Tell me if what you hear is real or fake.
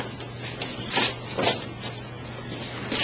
real